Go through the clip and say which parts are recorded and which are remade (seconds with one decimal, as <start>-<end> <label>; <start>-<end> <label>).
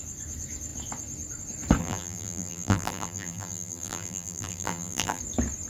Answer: 0.0-1.8 recorded; 1.8-5.2 remade; 5.2-5.7 recorded